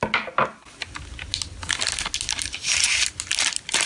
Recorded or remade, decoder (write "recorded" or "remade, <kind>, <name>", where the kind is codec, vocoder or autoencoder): recorded